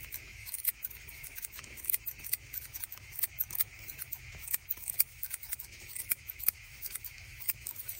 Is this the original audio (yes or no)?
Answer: no